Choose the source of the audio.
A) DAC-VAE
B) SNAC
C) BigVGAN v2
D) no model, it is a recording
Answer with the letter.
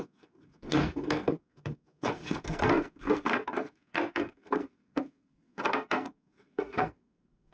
B